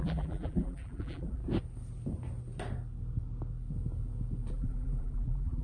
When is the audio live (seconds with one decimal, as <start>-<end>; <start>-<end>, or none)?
1.4-4.5